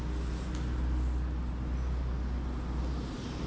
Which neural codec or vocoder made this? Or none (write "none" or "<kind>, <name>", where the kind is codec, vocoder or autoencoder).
none